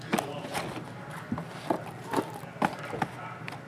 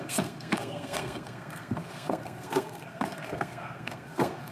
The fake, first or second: second